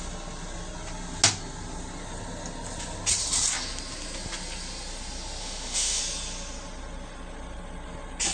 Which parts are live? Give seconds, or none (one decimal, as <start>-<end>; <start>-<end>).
0.0-5.4; 6.0-8.3